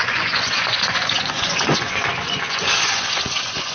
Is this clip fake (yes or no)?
yes